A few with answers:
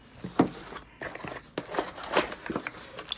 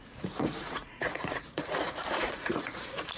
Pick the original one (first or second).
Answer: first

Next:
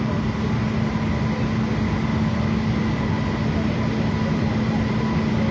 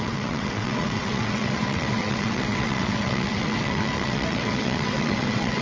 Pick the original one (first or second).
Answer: first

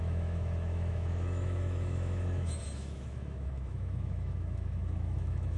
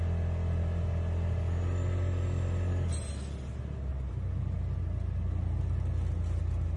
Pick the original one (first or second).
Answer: second